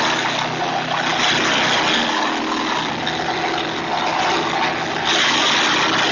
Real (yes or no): yes